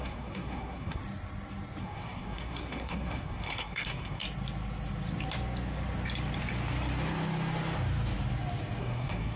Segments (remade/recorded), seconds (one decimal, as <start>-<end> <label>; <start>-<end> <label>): 0.0-1.0 remade; 1.0-1.8 recorded; 1.8-4.2 remade; 4.2-8.8 recorded; 8.8-9.4 remade